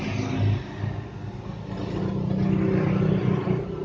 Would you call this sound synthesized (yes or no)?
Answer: no